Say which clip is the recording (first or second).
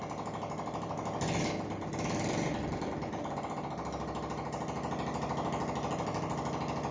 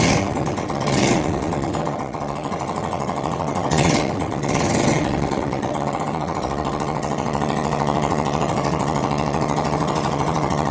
first